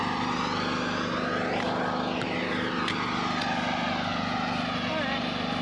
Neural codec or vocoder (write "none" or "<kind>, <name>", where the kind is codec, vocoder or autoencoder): none